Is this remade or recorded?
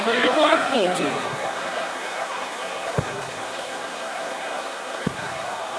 remade